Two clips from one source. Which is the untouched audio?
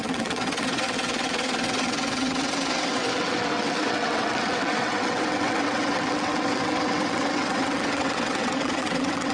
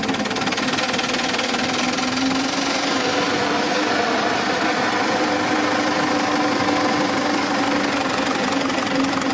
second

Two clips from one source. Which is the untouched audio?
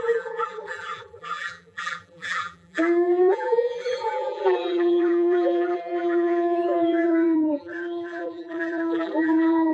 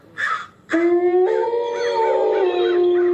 second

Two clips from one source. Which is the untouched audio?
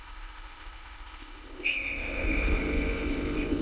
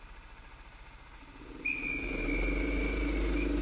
second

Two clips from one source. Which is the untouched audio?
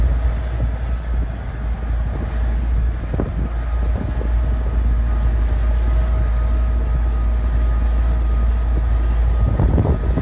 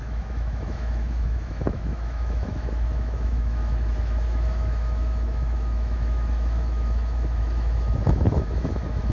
first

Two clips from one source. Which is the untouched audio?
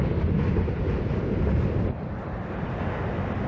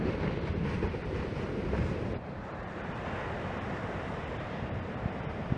first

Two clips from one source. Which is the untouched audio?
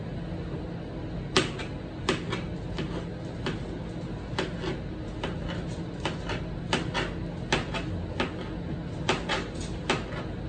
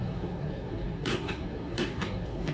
first